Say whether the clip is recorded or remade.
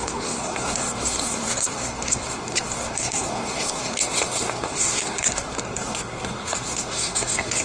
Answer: remade